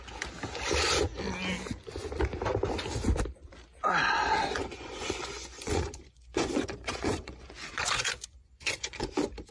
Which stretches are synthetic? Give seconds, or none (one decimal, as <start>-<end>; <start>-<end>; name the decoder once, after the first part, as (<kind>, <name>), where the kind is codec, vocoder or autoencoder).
4.6-9.1 (vocoder, Vocos)